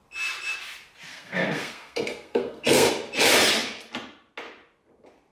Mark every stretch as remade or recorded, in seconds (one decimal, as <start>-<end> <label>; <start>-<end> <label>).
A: 0.0-1.1 recorded; 1.1-2.9 remade; 2.9-5.3 recorded